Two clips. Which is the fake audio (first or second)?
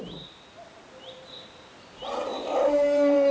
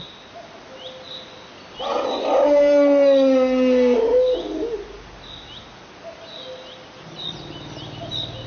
first